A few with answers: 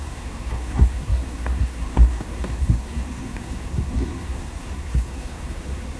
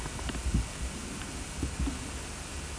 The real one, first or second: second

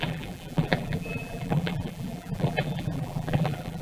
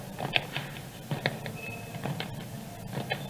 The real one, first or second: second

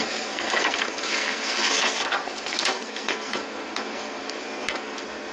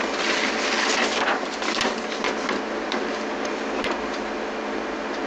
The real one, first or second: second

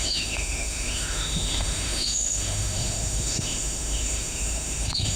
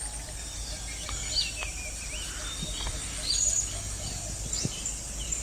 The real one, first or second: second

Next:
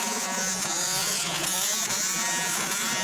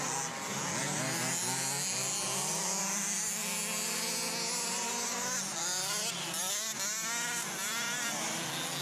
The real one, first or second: second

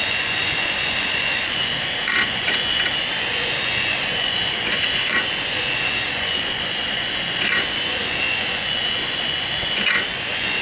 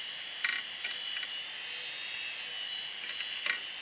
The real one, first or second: second